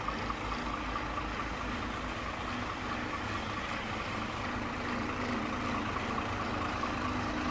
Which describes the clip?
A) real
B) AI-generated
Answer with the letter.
A